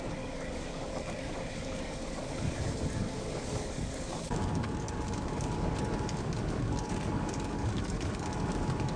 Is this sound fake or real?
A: fake